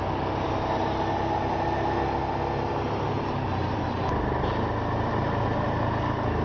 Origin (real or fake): real